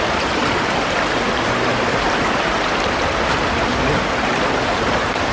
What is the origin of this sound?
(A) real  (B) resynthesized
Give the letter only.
B